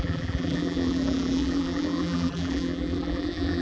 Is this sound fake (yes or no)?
yes